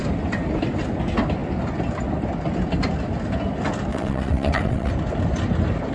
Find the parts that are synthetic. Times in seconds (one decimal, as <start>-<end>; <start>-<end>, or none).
3.9-4.9